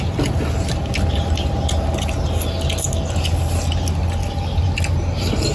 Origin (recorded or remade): recorded